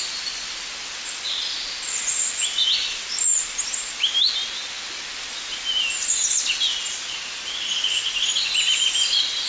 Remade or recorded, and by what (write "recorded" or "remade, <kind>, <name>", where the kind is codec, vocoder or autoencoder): recorded